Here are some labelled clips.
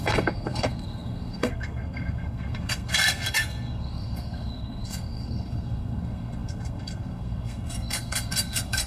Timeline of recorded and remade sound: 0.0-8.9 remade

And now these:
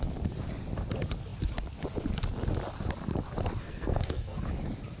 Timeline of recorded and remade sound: 0.0-3.6 recorded; 3.6-4.4 remade; 4.4-5.0 recorded

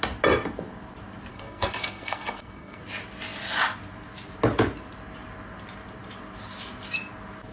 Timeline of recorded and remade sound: 0.0-1.3 recorded; 1.3-2.8 remade; 2.8-7.5 recorded

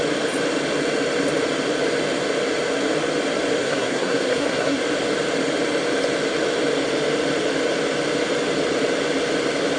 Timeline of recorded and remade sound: 0.0-3.6 recorded; 3.6-4.8 remade; 4.8-9.8 recorded

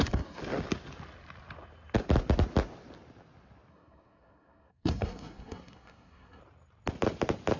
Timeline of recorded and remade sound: 0.0-0.4 remade; 0.4-3.7 recorded; 3.7-6.4 remade; 6.4-7.6 recorded

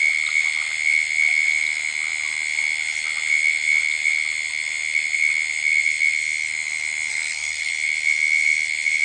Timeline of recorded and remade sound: 0.0-7.1 recorded; 7.1-7.7 remade; 7.7-9.0 recorded

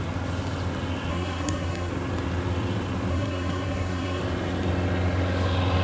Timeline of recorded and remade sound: 0.0-1.1 recorded; 1.1-1.9 remade; 1.9-3.1 recorded; 3.1-4.2 remade; 4.2-5.8 recorded

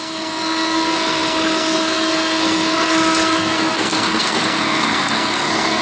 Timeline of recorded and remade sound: 0.0-5.8 remade